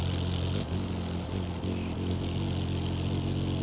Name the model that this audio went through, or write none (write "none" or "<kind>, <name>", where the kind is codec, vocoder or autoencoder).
none